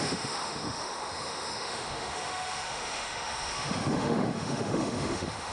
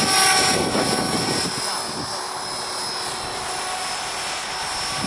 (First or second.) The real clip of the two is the second